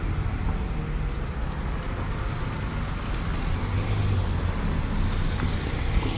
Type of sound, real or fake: real